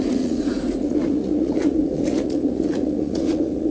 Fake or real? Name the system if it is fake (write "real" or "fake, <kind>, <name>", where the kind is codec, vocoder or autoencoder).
fake, vocoder, Vocos